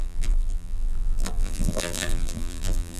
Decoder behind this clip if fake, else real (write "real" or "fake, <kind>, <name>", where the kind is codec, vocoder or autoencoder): fake, vocoder, BigVGAN v2